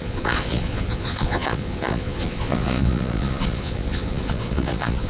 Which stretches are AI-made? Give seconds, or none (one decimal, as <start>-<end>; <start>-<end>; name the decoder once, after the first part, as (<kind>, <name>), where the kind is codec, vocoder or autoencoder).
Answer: 0.0-5.1 (vocoder, Vocos)